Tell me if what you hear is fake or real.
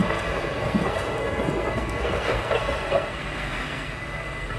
fake